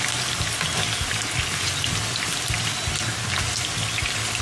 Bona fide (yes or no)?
no